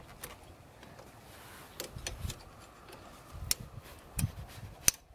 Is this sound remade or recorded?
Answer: recorded